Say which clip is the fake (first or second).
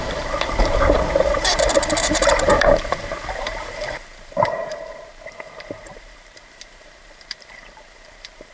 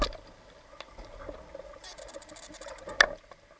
first